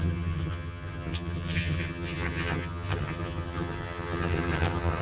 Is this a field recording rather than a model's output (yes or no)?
no